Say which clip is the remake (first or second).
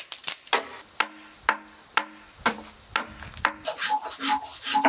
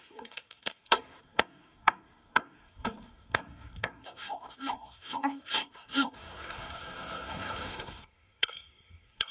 second